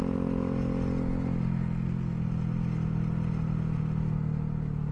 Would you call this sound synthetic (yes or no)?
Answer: no